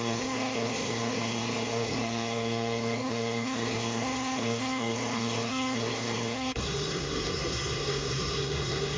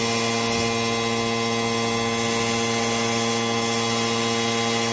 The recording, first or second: second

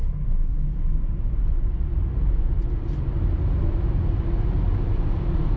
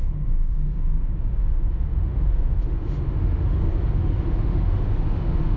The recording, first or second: first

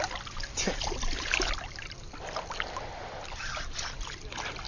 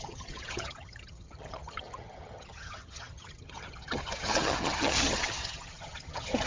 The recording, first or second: first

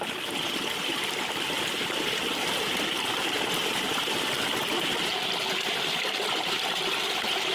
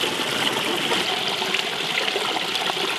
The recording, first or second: second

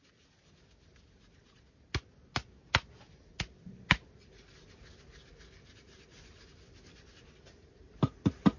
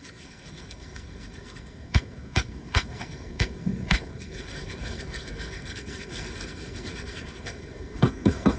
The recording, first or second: first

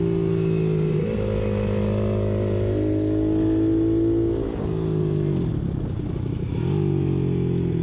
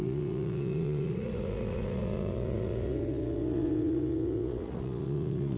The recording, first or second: first